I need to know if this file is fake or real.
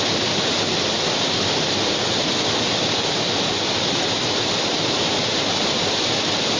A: real